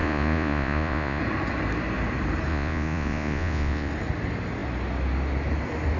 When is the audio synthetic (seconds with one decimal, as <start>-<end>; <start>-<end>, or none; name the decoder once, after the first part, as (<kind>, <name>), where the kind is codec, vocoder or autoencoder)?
0.0-1.2 (vocoder, Vocos); 2.5-3.9